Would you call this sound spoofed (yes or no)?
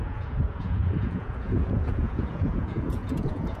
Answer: yes